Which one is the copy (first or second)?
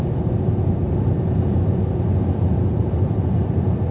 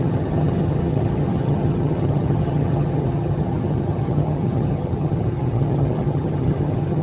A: second